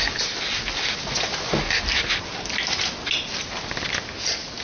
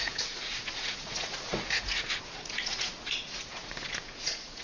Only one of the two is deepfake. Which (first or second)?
second